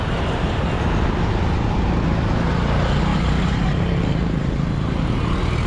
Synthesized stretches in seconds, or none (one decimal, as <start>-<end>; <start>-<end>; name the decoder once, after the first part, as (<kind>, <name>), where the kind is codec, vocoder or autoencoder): 3.1-3.8 (vocoder, BigVGAN v2)